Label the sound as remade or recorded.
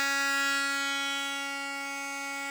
recorded